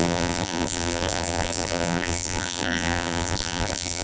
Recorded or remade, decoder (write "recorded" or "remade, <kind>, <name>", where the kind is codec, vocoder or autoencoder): remade, vocoder, BigVGAN v2